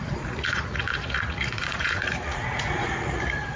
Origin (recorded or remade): remade